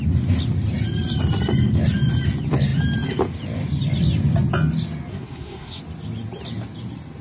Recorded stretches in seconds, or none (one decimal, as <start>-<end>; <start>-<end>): 0.0-5.1; 5.8-7.2